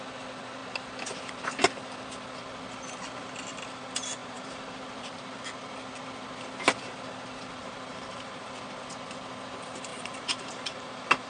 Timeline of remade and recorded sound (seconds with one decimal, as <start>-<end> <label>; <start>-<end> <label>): 0.0-4.2 recorded; 4.2-5.2 remade; 5.2-7.6 recorded; 7.6-8.4 remade; 8.4-9.9 recorded; 9.9-11.3 remade